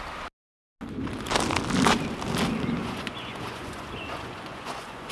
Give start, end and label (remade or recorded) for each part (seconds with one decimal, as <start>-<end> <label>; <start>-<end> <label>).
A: 0.0-2.8 recorded; 2.8-5.1 remade